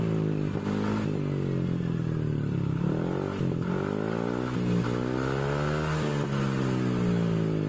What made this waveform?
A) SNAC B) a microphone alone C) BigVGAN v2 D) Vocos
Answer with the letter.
B